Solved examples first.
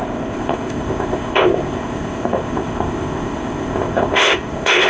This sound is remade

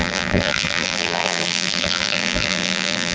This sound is remade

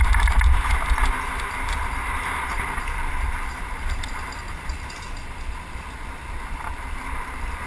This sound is recorded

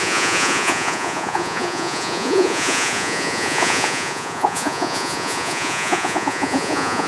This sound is remade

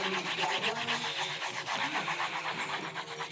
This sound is recorded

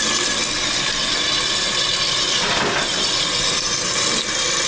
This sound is recorded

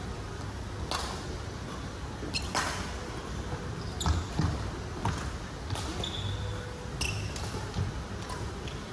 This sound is recorded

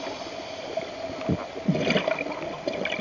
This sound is recorded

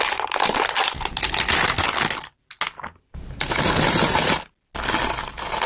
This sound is recorded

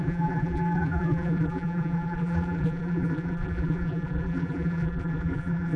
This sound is remade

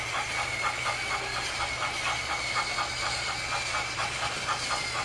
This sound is recorded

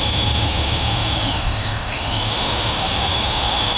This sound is remade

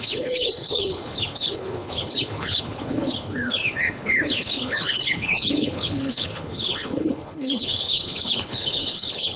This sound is remade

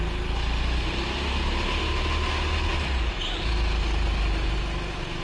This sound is recorded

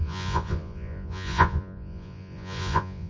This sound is remade